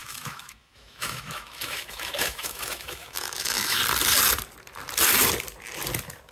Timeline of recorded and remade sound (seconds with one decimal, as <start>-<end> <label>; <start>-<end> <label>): 0.0-3.8 remade; 3.8-6.3 recorded

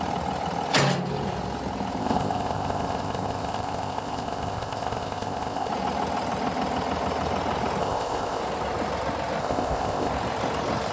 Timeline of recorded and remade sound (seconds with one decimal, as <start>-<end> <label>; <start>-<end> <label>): 0.0-2.0 recorded; 2.0-5.7 remade; 5.7-7.8 recorded; 7.8-8.4 remade; 8.4-9.4 recorded; 9.4-10.1 remade; 10.1-10.9 recorded

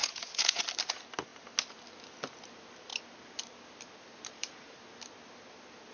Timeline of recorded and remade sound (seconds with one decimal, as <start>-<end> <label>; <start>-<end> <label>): 0.0-0.6 remade; 0.6-5.9 recorded

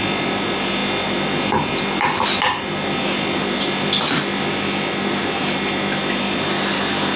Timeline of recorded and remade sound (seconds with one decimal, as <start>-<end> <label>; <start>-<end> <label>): 0.0-7.2 recorded

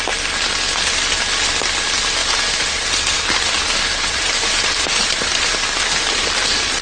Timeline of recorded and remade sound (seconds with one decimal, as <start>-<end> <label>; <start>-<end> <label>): 0.0-2.2 recorded; 2.2-5.5 remade; 5.5-6.8 recorded

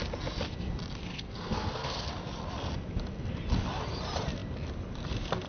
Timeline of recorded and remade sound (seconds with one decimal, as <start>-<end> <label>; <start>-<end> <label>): 0.0-1.1 recorded; 1.1-2.1 remade; 2.1-5.5 recorded